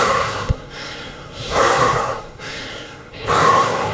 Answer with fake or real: fake